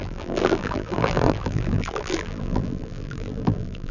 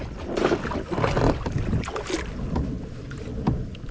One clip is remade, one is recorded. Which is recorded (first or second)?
second